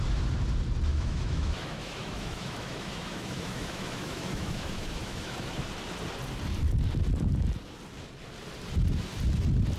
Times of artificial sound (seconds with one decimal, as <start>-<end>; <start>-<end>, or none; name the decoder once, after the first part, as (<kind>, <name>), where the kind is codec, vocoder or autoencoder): 0.9-5.6 (autoencoder, DAC-VAE)